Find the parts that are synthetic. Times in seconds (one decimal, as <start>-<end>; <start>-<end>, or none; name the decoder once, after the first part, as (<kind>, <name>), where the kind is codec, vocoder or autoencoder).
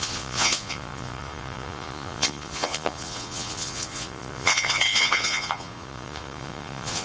0.0-7.0 (vocoder, Vocos)